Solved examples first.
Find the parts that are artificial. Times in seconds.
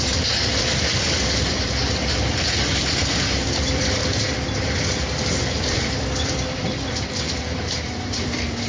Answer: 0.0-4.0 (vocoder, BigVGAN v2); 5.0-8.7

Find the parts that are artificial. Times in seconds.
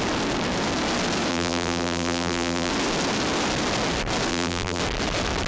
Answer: 1.3-2.7 (vocoder, BigVGAN v2); 4.3-4.8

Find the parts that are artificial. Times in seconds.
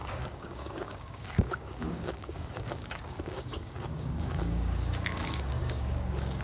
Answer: 0.0-6.4 (codec, DAC)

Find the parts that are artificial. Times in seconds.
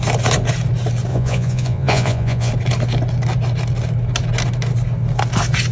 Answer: 1.1-2.5 (vocoder, Vocos)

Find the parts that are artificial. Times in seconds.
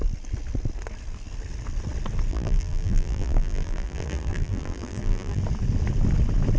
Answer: 2.3-5.4 (vocoder, BigVGAN v2)